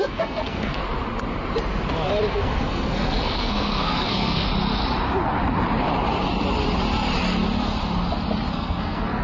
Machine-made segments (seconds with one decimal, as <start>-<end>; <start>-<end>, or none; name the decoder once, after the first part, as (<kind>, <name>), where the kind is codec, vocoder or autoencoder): 0.0-0.8 (codec, SNAC); 2.3-4.5; 8.5-9.2